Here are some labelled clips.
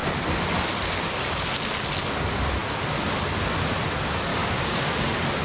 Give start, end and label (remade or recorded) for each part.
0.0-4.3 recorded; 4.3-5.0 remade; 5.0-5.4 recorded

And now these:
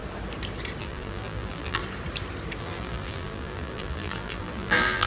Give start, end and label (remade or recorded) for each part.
0.0-0.8 recorded; 0.8-1.8 remade; 1.8-2.6 recorded; 2.6-5.1 remade

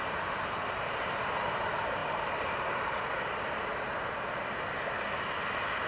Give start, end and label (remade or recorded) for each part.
0.0-5.9 recorded

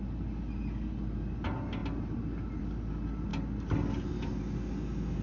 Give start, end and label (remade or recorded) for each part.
0.0-5.2 recorded